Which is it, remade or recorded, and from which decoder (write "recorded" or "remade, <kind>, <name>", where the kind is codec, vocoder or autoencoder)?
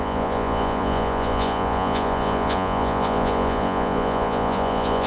remade, vocoder, Vocos